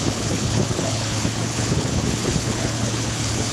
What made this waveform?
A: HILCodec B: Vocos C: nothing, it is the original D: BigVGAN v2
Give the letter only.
A